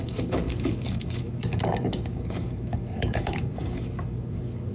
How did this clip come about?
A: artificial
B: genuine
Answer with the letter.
A